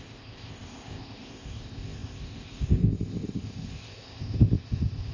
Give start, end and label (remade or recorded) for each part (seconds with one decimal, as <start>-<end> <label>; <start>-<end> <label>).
0.0-5.1 remade